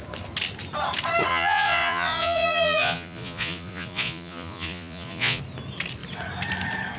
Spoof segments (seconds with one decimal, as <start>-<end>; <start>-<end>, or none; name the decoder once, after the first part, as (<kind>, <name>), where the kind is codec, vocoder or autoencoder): 1.3-5.4 (vocoder, Vocos)